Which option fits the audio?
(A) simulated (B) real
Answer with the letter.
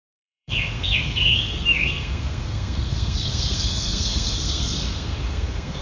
A